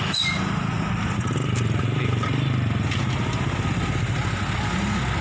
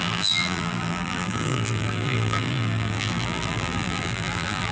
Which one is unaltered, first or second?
first